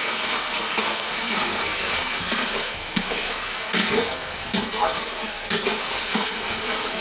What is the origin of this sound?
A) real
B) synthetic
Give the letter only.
B